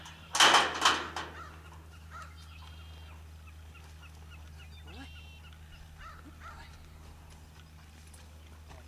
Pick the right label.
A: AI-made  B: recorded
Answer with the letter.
B